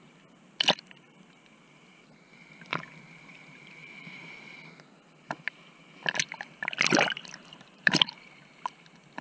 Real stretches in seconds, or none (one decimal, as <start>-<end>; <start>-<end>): 0.0-3.8; 4.4-7.4; 8.0-9.2